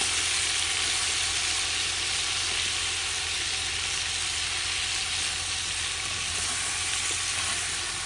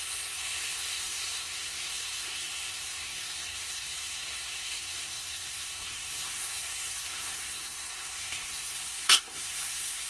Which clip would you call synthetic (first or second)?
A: second